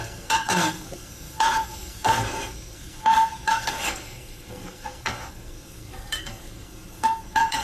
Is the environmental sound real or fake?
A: fake